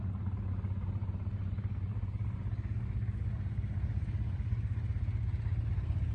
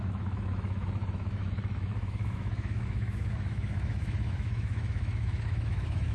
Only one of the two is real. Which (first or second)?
first